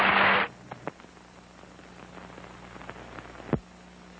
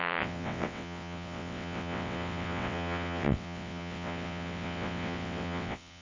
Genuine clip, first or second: first